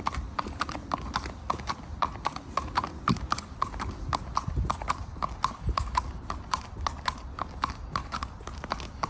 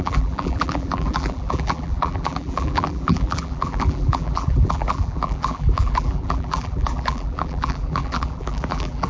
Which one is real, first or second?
first